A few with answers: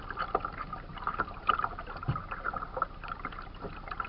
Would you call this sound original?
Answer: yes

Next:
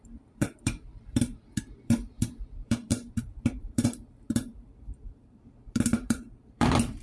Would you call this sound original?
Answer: no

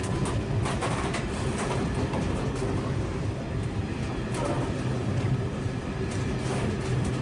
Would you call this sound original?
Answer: yes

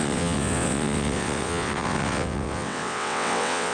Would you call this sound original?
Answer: no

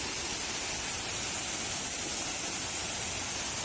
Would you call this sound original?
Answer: yes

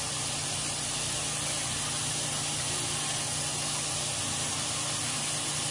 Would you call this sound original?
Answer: yes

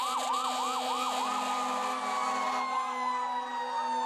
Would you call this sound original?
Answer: yes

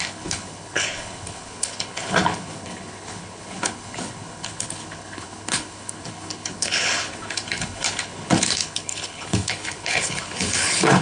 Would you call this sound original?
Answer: no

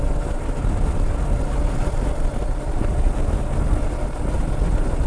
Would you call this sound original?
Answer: yes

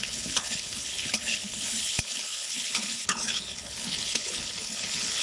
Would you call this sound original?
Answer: no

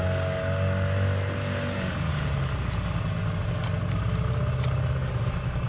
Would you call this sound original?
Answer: yes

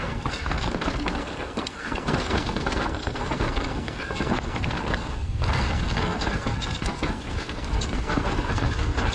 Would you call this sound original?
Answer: no